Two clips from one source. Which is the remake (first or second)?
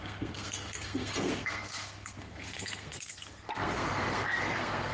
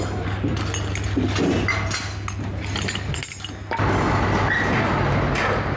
first